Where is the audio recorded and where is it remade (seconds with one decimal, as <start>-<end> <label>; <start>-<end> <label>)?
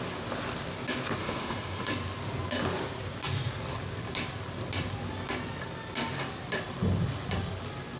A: 0.0-1.2 recorded; 1.2-1.9 remade; 1.9-8.0 recorded